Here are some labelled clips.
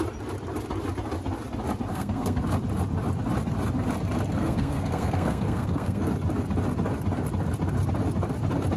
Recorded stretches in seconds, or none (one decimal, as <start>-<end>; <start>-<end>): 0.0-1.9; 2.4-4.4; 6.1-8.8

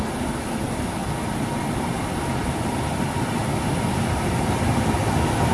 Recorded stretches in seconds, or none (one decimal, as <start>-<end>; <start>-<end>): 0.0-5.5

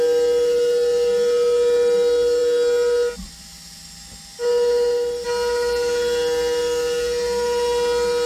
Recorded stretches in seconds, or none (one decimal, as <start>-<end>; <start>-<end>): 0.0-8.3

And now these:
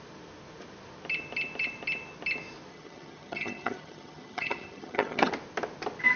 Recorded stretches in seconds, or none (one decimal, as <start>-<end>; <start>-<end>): 0.0-2.7; 5.3-6.2